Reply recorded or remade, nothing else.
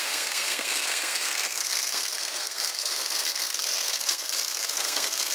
remade